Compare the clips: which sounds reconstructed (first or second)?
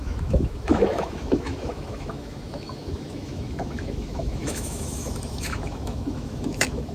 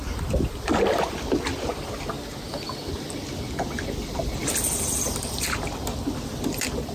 first